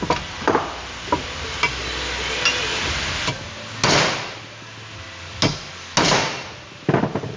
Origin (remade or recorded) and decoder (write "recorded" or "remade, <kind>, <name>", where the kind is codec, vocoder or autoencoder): recorded